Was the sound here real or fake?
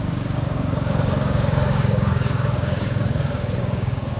fake